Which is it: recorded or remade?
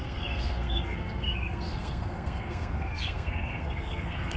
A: remade